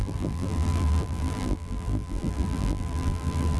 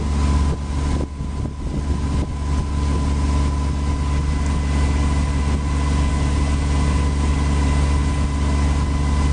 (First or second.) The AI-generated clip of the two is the first